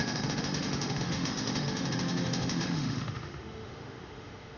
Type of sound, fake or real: fake